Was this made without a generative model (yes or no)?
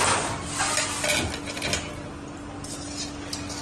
yes